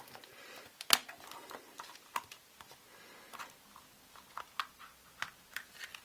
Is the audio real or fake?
real